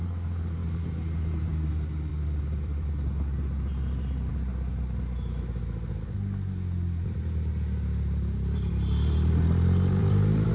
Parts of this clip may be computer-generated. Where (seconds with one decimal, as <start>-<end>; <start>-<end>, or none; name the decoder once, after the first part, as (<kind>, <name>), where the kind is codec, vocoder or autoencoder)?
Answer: 2.1-2.9 (vocoder, BigVGAN v2); 10.0-10.5

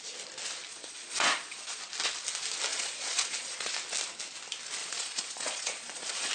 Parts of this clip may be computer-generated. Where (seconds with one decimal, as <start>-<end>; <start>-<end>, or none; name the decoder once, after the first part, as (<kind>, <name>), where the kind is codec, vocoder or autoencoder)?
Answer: 0.7-1.8 (vocoder, Vocos); 2.7-3.7; 4.8-6.3